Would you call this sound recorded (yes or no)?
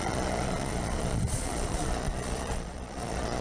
no